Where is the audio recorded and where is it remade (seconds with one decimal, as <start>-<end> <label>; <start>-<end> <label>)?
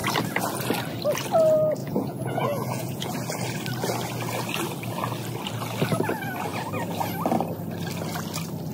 0.0-1.8 recorded; 1.8-3.1 remade; 3.1-8.7 recorded